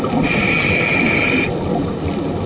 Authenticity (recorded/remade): recorded